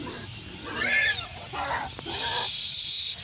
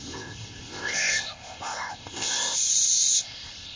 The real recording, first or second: first